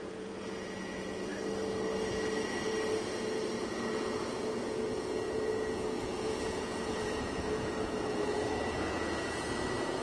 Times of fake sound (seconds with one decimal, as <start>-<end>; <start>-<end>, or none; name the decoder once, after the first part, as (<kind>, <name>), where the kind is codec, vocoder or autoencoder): 0.0-1.3 (vocoder, Vocos); 3.6-10.0